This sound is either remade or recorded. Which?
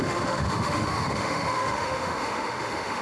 remade